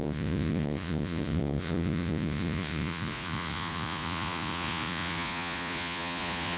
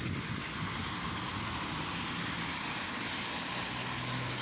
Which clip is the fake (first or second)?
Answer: first